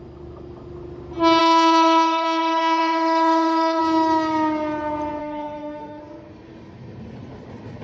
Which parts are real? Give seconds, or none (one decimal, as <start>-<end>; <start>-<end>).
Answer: 0.0-1.4; 3.8-5.2; 6.0-7.8